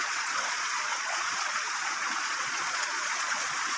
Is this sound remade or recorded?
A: remade